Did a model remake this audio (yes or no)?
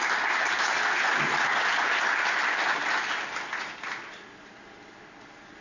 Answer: no